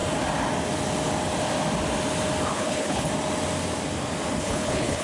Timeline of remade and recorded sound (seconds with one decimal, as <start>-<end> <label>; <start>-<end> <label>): 0.0-2.5 recorded; 2.5-3.1 remade; 3.1-4.4 recorded; 4.4-5.0 remade